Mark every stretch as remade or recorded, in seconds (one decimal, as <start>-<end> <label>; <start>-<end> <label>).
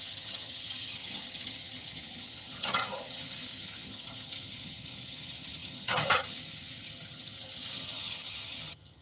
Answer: 0.0-9.0 remade